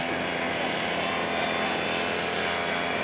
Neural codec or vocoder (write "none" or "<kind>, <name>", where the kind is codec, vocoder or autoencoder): none